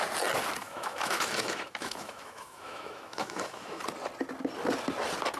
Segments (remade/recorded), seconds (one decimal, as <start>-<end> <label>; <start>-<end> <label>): 0.0-0.6 recorded; 0.6-3.8 remade; 3.8-5.4 recorded